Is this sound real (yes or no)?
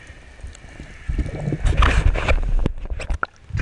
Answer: yes